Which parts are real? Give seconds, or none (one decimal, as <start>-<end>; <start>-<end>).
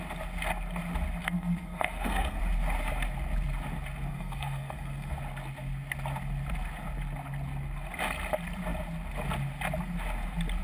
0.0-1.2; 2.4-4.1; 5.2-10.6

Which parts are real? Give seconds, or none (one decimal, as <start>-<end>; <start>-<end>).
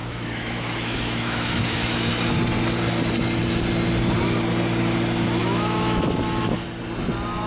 2.1-5.4; 6.0-7.5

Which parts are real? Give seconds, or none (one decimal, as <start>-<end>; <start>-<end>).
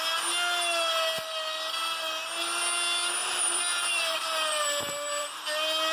0.0-3.2; 5.4-5.9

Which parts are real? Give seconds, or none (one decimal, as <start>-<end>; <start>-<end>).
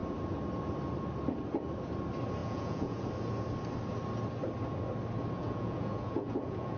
0.0-2.4; 3.1-5.4